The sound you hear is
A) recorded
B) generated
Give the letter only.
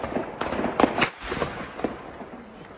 A